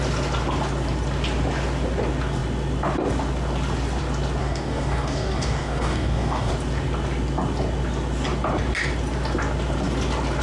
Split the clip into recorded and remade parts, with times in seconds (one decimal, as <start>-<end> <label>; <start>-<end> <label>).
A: 0.0-4.4 recorded; 4.4-6.5 remade; 6.5-10.4 recorded